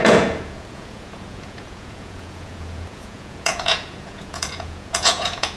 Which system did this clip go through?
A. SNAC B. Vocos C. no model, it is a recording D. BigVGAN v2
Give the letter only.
B